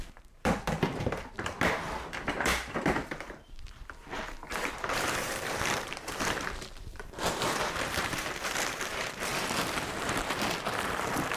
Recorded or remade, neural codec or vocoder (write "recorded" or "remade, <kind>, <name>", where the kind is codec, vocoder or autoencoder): remade, vocoder, BigVGAN v2